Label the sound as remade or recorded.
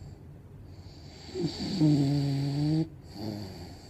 recorded